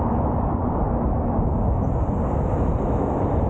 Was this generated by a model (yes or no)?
no